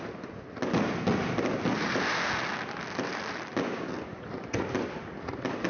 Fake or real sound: real